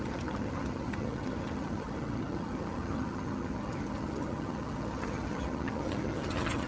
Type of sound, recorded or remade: remade